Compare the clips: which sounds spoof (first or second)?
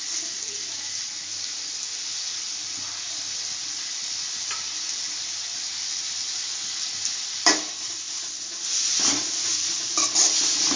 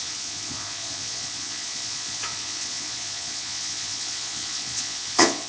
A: second